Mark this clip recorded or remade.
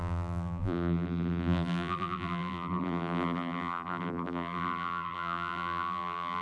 remade